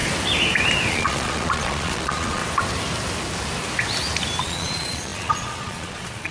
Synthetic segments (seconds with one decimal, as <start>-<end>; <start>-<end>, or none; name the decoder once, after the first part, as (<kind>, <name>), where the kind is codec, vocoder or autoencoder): 0.9-2.4 (vocoder, Vocos); 4.4-6.3